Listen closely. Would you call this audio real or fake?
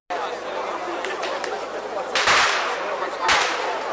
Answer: real